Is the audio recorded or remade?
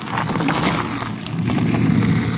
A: recorded